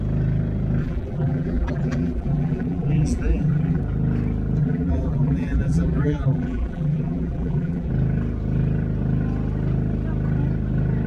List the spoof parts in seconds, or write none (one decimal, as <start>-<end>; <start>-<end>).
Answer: 0.8-3.8; 4.6-7.9